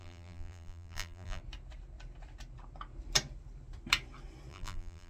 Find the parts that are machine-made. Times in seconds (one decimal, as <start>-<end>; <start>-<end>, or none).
0.0-1.4; 4.5-5.1